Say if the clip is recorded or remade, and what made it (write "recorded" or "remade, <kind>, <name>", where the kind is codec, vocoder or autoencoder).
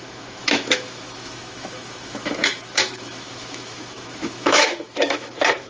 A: remade, autoencoder, DAC-VAE